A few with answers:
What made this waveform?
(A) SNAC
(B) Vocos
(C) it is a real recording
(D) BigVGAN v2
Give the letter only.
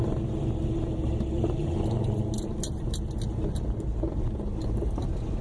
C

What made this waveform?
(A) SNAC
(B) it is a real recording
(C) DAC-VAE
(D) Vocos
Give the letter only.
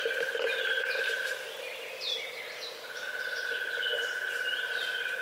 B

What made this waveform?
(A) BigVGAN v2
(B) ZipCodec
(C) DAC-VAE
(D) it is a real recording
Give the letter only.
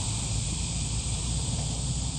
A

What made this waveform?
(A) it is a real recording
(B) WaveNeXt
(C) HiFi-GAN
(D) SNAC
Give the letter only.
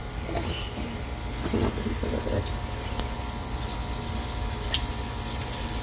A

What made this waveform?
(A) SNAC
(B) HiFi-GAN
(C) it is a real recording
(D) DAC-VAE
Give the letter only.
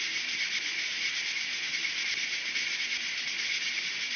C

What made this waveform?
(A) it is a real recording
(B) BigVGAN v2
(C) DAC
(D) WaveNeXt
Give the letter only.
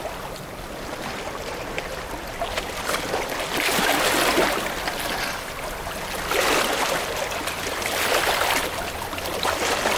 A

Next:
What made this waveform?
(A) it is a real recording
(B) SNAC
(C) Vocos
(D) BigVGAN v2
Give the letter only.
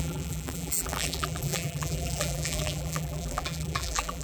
D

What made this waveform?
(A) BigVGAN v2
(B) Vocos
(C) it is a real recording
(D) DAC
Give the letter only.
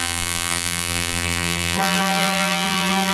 A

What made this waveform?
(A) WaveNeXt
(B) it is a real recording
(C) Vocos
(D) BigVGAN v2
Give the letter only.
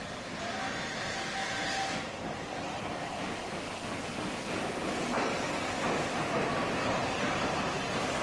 B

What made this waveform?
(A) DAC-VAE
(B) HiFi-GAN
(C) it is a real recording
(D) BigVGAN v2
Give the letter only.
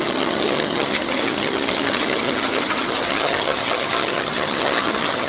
B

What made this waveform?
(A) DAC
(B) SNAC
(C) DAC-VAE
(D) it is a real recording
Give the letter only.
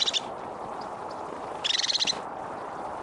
D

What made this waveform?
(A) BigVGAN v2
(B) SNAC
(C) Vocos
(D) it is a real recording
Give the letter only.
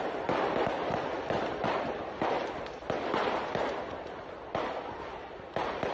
A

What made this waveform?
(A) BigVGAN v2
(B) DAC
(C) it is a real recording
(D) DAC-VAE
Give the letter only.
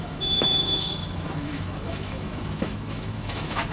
D